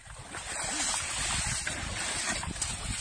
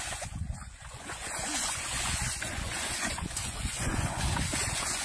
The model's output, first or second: second